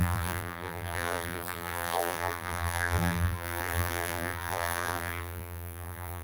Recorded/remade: remade